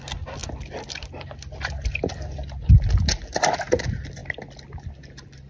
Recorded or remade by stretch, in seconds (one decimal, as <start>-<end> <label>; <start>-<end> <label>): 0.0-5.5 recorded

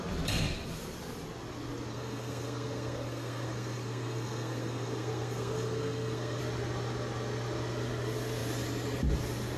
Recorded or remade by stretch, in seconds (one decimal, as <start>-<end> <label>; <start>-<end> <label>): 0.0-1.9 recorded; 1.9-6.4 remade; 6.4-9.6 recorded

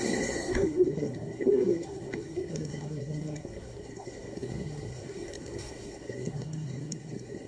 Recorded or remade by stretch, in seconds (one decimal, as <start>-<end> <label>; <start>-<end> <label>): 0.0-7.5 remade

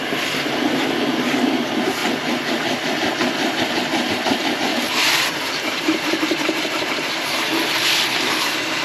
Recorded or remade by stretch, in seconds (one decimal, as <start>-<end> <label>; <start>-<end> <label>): 0.0-2.0 remade; 2.0-4.1 recorded; 4.1-8.8 remade